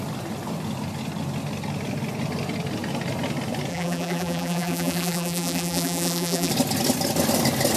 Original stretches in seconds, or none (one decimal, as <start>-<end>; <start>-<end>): 0.0-3.7; 6.5-7.8